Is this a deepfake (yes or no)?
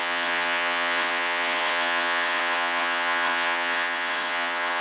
yes